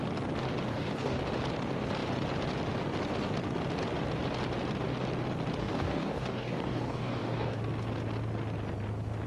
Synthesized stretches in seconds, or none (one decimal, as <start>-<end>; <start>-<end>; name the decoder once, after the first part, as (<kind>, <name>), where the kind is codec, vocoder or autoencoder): 0.7-1.2 (codec, DAC); 5.6-7.6